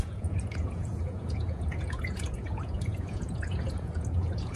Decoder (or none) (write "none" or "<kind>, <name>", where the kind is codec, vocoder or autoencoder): vocoder, Vocos